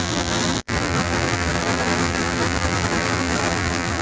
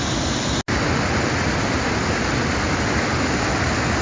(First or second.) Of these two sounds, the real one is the second